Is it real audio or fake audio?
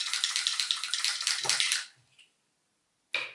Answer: real